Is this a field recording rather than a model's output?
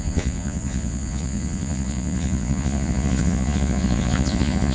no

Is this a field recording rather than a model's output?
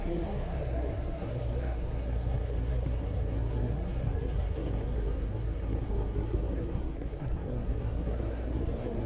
no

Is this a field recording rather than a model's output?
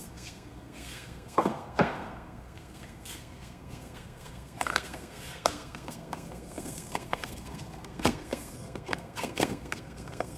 no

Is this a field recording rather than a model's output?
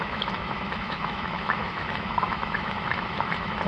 no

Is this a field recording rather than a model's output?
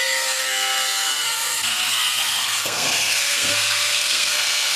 no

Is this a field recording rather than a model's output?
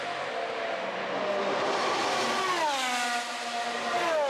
yes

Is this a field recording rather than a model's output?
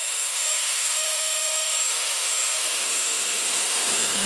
no